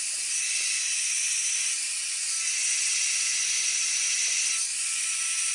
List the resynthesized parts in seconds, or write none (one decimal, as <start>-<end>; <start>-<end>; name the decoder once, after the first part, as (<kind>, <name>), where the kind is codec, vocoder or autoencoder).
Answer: 0.5-1.3 (vocoder, Vocos)